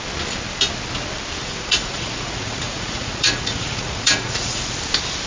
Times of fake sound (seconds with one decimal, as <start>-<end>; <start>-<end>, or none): 1.4-4.6